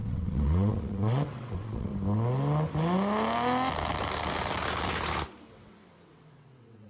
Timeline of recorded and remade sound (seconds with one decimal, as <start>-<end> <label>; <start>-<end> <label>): 0.0-1.9 remade; 1.9-5.5 recorded; 5.5-6.9 remade